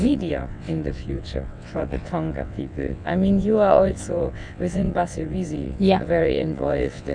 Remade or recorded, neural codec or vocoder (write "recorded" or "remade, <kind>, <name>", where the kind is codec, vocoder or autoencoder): remade, vocoder, WaveNeXt